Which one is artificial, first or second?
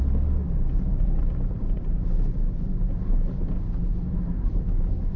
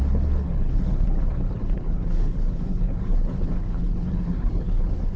second